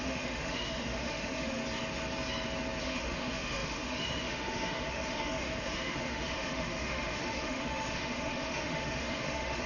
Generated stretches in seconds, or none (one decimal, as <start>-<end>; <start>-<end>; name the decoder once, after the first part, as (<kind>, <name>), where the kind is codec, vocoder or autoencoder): 0.0-1.6 (autoencoder, DAC-VAE); 2.8-9.7